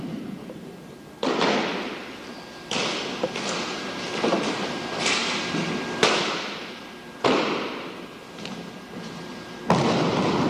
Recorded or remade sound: remade